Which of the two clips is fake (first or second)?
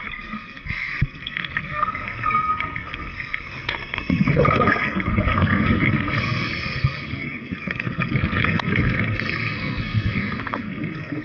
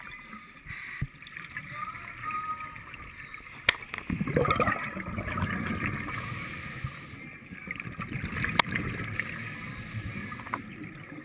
first